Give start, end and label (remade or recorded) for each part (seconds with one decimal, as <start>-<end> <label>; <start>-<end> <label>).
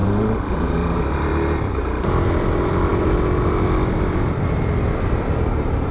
0.0-1.1 remade; 1.1-5.9 recorded